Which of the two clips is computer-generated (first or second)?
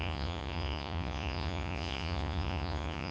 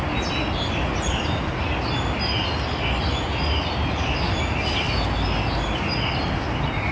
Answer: first